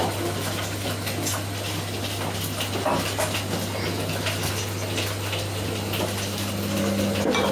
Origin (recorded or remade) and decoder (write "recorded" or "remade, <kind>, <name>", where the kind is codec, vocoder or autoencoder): recorded